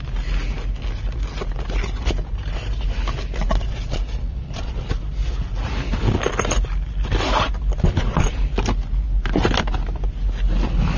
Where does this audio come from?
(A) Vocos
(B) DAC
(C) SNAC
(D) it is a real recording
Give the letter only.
D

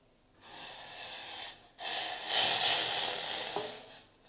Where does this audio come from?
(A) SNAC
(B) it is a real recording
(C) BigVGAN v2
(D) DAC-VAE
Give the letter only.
B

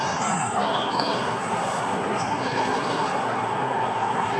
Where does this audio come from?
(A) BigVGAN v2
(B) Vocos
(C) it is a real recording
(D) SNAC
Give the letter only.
D